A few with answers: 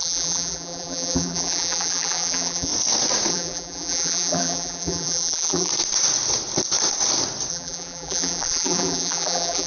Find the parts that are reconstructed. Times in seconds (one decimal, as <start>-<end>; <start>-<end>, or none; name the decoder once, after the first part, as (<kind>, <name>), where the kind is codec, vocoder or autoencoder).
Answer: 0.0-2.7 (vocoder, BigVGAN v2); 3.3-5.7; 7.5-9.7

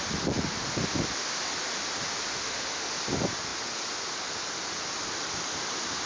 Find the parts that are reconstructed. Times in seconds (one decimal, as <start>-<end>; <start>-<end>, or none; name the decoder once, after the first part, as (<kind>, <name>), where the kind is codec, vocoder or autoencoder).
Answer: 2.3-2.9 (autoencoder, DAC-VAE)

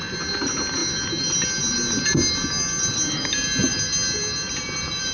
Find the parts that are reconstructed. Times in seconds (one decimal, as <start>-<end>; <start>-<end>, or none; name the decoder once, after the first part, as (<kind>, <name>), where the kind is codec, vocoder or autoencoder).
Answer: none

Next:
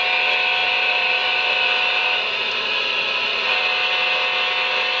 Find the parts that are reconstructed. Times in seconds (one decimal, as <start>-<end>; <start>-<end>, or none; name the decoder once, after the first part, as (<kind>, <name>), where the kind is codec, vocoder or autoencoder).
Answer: 0.6-3.6 (vocoder, BigVGAN v2)